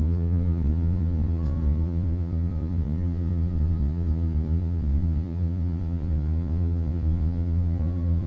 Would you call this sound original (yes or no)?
no